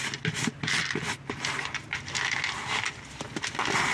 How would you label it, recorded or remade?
recorded